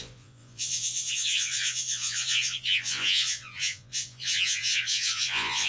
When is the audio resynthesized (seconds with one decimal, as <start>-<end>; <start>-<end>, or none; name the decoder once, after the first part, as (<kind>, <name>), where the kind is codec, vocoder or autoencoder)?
0.0-5.7 (vocoder, Vocos)